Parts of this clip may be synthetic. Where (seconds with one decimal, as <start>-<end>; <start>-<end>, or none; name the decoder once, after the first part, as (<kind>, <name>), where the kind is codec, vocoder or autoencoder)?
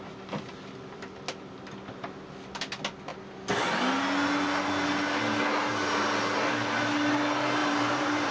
7.6-8.3 (vocoder, BigVGAN v2)